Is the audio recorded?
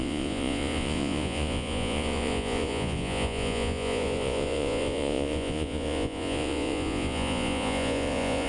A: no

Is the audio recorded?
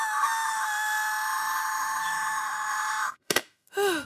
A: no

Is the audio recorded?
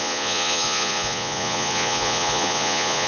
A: no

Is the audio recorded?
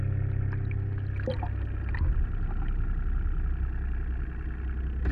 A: yes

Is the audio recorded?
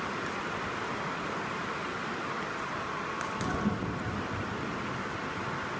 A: yes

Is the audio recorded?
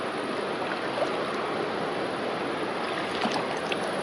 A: yes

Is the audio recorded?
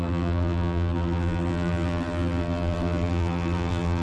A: no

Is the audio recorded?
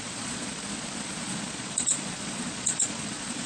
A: no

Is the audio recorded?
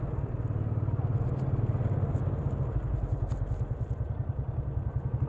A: yes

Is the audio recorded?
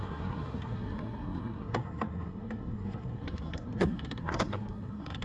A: no